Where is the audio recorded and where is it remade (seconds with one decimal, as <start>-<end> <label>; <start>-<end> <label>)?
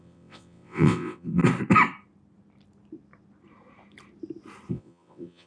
0.0-1.4 remade; 1.4-4.7 recorded; 4.7-5.5 remade